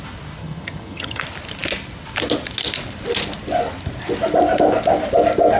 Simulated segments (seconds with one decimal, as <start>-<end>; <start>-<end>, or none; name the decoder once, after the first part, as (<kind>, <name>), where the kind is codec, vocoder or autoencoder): 0.4-1.2 (vocoder, HiFi-GAN)